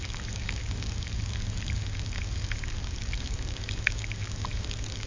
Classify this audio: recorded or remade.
remade